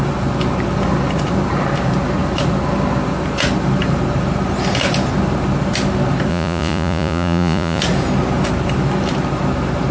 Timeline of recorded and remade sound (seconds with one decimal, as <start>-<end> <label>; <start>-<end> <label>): 0.0-6.3 recorded; 6.3-7.8 remade; 7.8-9.9 recorded